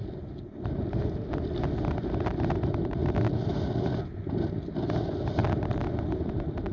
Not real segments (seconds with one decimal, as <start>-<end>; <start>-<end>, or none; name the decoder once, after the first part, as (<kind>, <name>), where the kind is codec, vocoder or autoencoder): none